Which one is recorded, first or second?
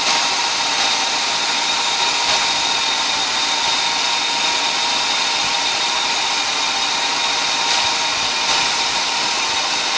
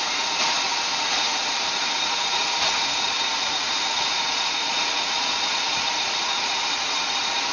first